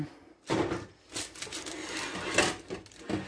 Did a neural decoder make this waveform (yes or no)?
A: no